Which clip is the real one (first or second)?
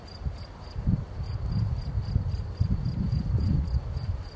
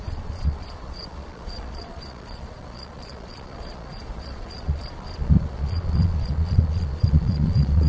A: first